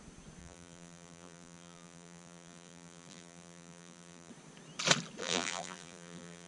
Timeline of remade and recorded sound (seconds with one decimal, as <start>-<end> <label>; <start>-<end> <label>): 0.0-0.4 recorded; 0.4-4.3 remade; 4.3-5.2 recorded; 5.2-6.5 remade